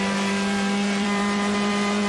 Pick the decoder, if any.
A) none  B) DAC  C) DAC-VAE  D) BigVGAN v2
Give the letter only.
D